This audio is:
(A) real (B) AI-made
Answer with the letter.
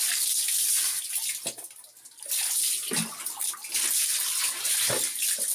A